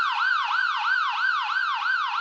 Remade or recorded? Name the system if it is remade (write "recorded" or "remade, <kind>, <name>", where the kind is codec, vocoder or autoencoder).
recorded